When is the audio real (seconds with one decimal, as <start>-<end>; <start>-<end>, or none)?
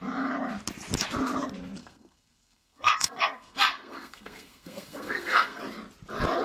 0.0-1.8; 5.6-6.4